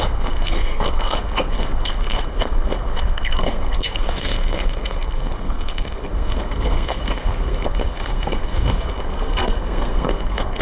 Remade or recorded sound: remade